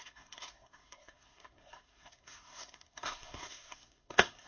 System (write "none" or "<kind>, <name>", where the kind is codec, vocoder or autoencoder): codec, SNAC